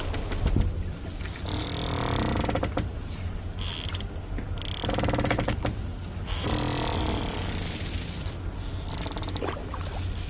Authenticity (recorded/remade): recorded